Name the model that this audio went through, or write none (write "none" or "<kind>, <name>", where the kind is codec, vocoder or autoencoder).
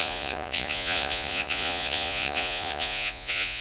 vocoder, Vocos